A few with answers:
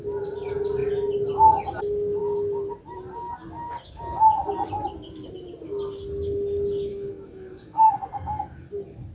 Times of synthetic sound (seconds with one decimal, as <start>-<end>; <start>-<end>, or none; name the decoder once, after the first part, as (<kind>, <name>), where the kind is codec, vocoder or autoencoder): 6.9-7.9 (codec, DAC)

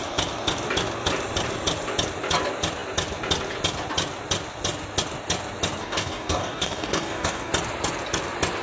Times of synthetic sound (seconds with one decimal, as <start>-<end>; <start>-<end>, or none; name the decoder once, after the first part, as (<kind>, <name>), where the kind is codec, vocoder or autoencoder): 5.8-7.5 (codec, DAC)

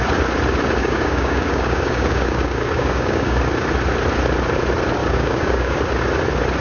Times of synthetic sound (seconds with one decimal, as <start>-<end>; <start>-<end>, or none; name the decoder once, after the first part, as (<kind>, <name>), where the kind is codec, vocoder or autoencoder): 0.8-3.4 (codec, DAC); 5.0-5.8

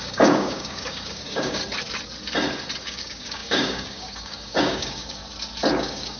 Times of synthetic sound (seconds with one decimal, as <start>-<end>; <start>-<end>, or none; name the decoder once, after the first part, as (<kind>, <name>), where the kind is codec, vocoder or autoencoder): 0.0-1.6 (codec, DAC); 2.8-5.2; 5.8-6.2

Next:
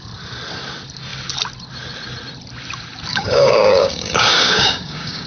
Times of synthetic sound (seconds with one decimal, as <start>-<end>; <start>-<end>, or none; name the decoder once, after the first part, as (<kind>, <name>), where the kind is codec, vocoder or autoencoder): 3.1-5.3 (codec, DAC)

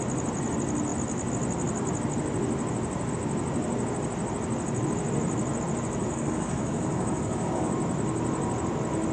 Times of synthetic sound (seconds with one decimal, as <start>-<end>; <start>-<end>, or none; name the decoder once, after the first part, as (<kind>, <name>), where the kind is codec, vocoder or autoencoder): 6.0-7.7 (codec, DAC)

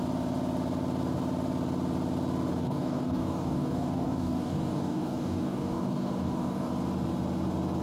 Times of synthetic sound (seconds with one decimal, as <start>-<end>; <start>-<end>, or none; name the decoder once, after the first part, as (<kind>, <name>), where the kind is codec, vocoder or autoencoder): 2.6-6.7 (codec, DAC)